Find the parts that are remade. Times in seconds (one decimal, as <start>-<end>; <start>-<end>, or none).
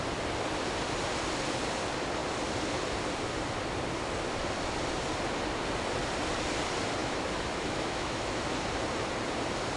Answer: 7.0-8.4